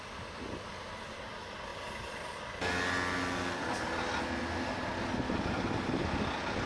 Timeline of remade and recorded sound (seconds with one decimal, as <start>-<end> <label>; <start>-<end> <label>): 0.0-6.7 recorded